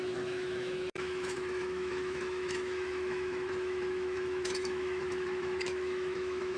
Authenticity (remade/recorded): remade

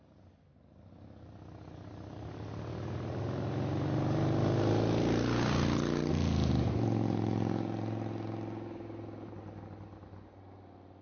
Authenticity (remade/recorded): recorded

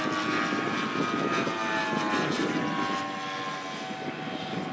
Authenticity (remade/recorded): recorded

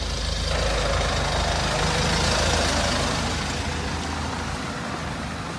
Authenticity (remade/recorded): recorded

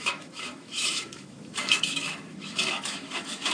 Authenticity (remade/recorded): remade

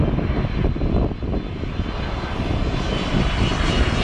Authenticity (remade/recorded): recorded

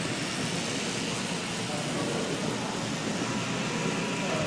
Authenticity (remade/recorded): recorded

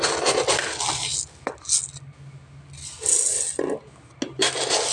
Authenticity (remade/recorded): recorded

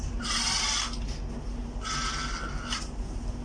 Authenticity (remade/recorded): recorded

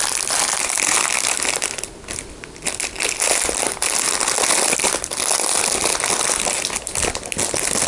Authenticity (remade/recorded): recorded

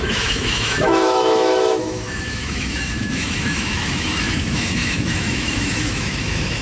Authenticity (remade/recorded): remade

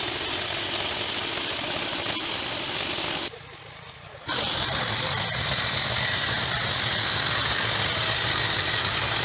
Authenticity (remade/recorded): recorded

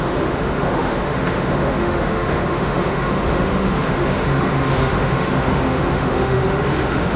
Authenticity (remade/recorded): remade